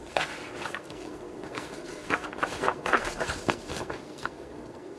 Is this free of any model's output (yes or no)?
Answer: no